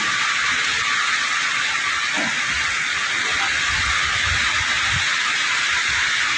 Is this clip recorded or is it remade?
recorded